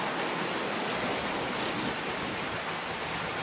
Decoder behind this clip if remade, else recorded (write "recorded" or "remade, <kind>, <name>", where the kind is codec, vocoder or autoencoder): recorded